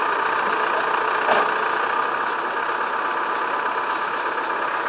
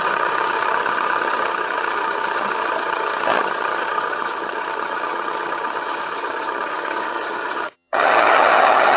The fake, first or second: second